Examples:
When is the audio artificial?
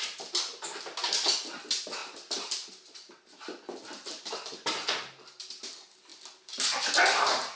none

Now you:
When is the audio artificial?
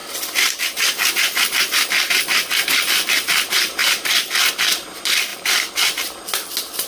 5.3-6.2 (vocoder, BigVGAN v2)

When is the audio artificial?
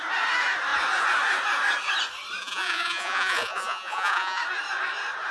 2.4-4.4 (vocoder, Vocos)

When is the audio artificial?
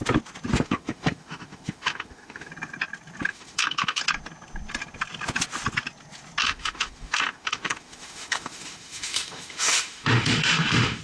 0.5-2.5 (autoencoder, DAC-VAE); 3.3-4.0; 6.4-11.0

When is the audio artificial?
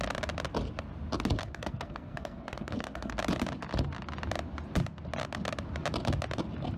1.4-3.1 (codec, SNAC)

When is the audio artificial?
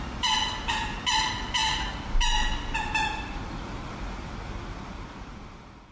none